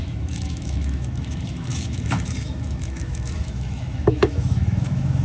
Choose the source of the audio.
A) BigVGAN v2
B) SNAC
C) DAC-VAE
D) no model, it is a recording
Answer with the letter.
C